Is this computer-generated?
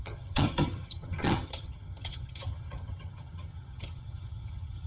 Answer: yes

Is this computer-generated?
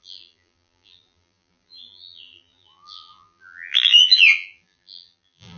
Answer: yes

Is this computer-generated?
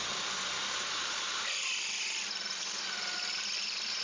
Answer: no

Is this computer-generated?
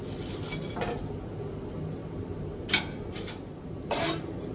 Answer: no